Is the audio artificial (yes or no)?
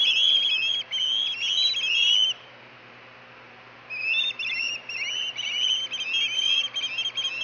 no